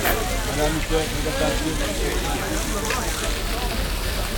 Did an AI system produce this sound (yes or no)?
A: no